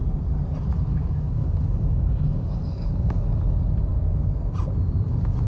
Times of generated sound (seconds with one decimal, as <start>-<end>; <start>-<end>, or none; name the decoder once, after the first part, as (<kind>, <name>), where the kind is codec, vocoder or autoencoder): 0.9-3.4 (codec, DAC)